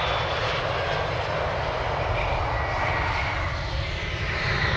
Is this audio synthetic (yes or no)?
no